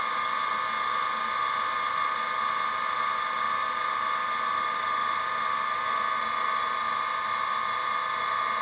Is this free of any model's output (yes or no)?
yes